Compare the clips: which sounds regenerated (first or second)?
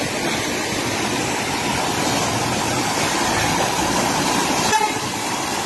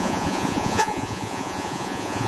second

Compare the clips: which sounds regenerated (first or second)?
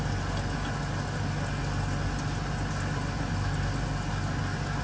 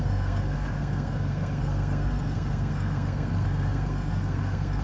second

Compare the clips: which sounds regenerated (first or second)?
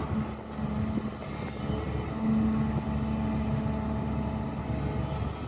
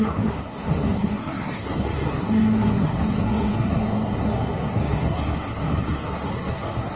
second